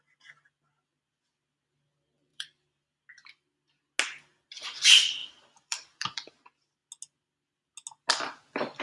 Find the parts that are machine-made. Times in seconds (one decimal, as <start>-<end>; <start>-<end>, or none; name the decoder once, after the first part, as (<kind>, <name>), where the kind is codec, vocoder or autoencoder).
2.3-3.0 (vocoder, BigVGAN v2); 5.2-6.3